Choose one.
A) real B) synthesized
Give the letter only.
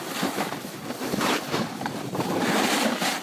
B